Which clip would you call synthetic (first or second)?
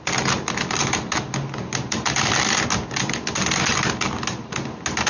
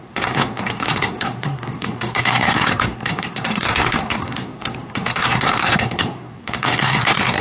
second